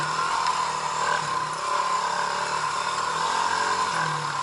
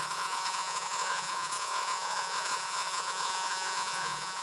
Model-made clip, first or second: second